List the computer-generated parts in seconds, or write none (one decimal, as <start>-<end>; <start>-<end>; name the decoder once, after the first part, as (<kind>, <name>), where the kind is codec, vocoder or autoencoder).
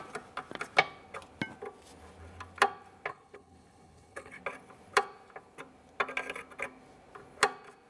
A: 3.1-4.4 (codec, HILCodec)